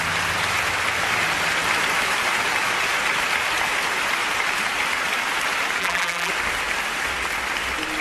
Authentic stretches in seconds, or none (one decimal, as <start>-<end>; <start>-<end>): 0.0-5.8; 6.3-8.0